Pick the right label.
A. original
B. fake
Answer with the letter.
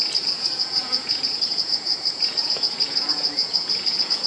B